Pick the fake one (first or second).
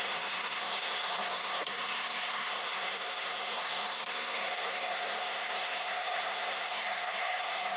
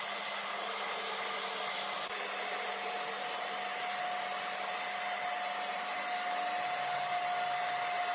first